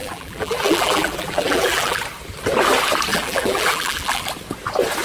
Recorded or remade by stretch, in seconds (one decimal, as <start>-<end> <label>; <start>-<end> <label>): 0.0-2.0 remade; 2.0-3.1 recorded; 3.1-4.2 remade; 4.2-5.0 recorded